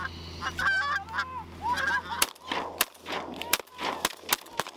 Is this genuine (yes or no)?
yes